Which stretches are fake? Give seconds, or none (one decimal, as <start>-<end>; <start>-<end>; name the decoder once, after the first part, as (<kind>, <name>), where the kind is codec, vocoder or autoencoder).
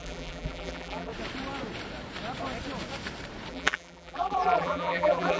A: 0.0-1.1 (vocoder, BigVGAN v2); 3.5-5.4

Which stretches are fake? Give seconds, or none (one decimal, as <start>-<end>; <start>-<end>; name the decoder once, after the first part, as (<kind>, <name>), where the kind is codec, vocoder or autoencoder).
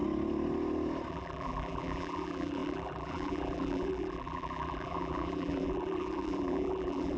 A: 1.1-7.2 (vocoder, BigVGAN v2)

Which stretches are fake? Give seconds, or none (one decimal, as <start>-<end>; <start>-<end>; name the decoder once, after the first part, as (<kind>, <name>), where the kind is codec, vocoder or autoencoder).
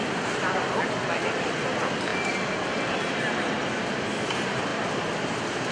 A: 0.0-0.7 (vocoder, BigVGAN v2)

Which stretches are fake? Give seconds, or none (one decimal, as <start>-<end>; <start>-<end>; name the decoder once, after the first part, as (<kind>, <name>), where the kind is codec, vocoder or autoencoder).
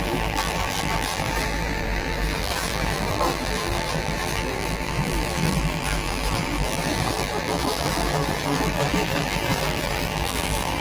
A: 0.0-10.8 (vocoder, BigVGAN v2)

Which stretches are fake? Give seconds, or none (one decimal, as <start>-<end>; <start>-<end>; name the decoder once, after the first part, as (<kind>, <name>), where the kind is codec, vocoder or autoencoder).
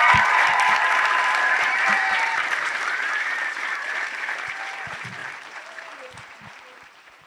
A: 0.0-7.3 (vocoder, BigVGAN v2)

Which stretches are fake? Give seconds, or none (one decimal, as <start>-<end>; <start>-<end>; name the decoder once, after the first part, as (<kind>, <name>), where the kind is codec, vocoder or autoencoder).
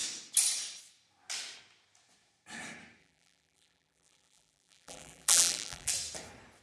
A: 3.0-5.9 (vocoder, BigVGAN v2)